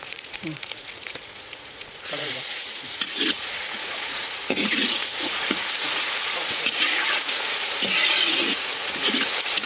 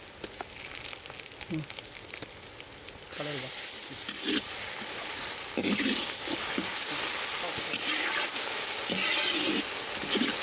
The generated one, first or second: first